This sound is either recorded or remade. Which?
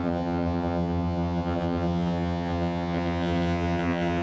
remade